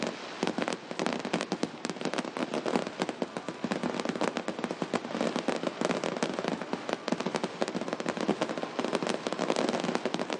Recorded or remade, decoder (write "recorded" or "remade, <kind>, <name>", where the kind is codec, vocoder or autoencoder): recorded